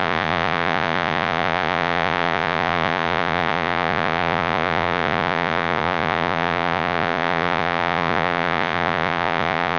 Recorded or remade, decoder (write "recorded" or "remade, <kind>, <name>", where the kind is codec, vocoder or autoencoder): remade, vocoder, Vocos